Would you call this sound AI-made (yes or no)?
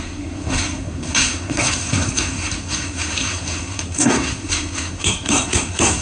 yes